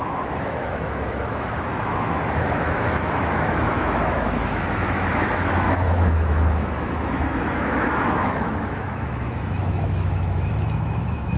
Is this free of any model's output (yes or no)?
no